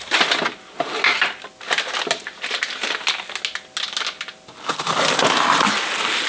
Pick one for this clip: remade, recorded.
recorded